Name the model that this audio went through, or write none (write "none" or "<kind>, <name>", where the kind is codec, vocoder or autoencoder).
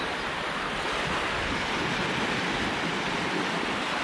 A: none